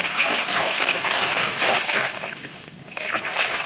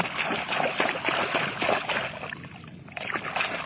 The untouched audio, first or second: second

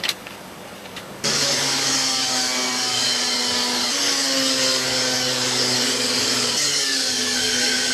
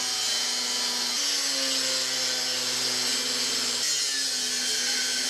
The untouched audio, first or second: second